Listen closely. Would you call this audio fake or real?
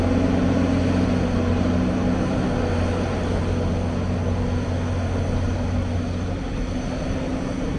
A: real